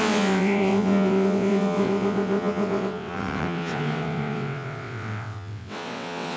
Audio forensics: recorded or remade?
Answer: remade